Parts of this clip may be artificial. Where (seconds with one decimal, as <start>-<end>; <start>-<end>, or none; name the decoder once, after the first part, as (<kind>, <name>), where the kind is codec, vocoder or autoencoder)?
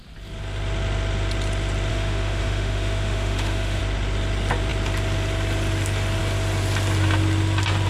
1.9-3.8 (autoencoder, DAC-VAE)